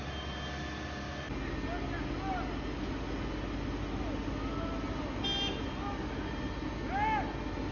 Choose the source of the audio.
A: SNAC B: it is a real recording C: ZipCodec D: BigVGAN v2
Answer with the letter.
B